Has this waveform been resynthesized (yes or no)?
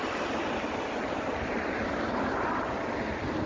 no